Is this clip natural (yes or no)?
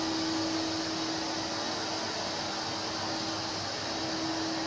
yes